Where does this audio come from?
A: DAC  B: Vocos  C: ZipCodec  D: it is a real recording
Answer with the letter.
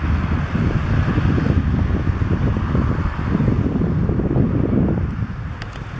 D